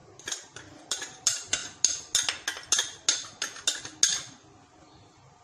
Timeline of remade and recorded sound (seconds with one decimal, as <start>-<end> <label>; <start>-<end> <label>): 0.0-1.6 remade; 1.6-4.8 recorded; 4.8-5.4 remade

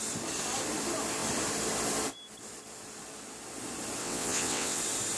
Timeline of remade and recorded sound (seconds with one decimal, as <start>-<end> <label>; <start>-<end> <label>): 0.0-4.0 recorded; 4.0-4.8 remade; 4.8-5.2 recorded

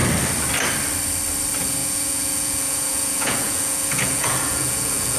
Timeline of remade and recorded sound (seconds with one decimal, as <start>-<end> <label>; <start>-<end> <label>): 0.0-1.8 recorded; 1.8-5.2 remade

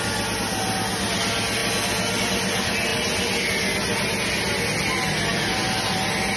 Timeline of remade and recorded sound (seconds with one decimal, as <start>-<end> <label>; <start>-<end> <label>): 0.0-6.4 recorded

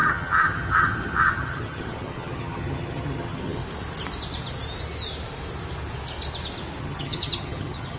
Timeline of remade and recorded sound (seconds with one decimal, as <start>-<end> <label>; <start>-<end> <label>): 0.0-3.6 remade; 3.6-6.8 recorded; 6.8-8.0 remade

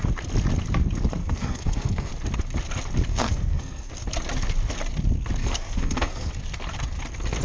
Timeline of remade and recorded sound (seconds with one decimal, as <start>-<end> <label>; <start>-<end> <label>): 0.0-1.2 recorded; 1.2-2.1 remade; 2.1-3.1 recorded; 3.1-3.9 remade; 3.9-5.4 recorded; 5.4-6.3 remade; 6.3-7.4 recorded

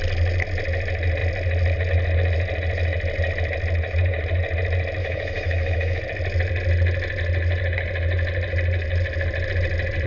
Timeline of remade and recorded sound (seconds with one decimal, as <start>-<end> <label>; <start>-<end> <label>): 0.0-5.0 recorded; 5.0-6.0 remade; 6.0-10.1 recorded